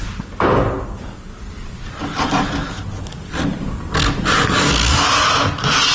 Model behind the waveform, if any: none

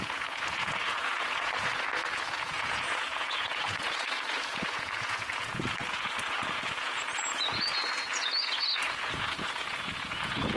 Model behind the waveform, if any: vocoder, Vocos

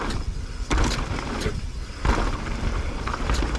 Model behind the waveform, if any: none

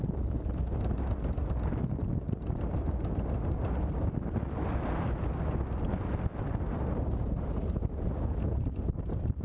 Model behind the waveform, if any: none